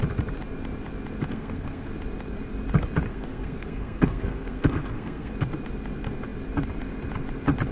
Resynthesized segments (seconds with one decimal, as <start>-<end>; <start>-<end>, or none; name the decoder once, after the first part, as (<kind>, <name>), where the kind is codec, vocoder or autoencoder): 1.3-1.9 (codec, SNAC); 3.1-5.3